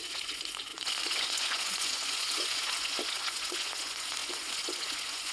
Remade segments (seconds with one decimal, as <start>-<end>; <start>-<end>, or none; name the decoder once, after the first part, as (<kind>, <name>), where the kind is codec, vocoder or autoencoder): 0.0-5.3 (vocoder, Vocos)